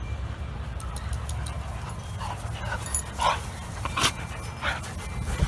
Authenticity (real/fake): real